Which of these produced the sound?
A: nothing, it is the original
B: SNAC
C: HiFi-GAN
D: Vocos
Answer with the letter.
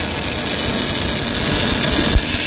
A